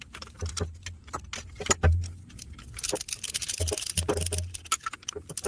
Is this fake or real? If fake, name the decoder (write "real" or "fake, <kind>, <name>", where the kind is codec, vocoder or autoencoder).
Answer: fake, vocoder, BigVGAN v2